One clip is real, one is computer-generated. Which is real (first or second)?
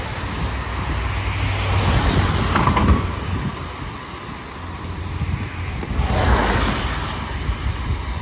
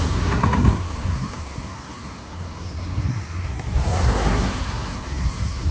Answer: first